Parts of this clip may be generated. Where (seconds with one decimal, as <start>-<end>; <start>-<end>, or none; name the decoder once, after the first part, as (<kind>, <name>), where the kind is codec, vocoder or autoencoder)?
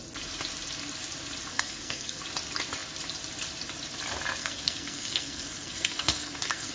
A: 1.5-2.2 (codec, SNAC); 4.4-6.7